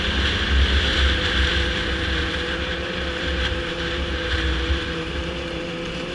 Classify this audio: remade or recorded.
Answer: remade